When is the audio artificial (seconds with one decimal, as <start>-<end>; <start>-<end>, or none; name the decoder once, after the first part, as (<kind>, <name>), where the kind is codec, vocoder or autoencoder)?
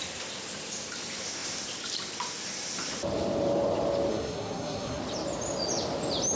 4.1-5.0 (codec, SNAC)